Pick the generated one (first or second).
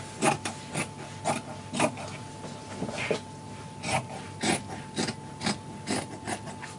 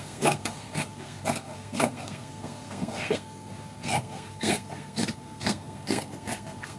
second